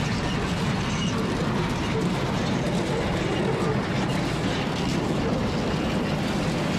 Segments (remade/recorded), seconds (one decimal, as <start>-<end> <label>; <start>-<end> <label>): 0.0-6.8 recorded